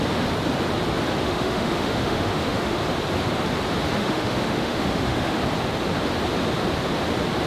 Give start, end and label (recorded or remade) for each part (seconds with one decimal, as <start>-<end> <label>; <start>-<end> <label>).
0.0-1.2 recorded; 1.2-2.8 remade; 2.8-4.0 recorded; 4.0-5.4 remade; 5.4-7.5 recorded